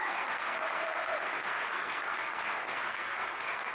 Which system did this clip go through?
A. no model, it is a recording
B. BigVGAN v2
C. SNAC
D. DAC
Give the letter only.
C